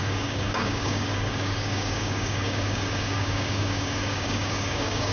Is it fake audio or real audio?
fake